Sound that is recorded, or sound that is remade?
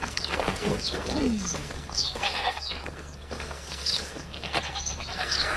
remade